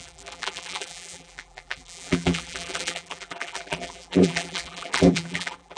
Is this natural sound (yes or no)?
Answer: no